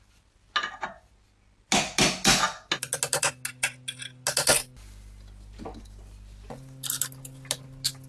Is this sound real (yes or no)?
yes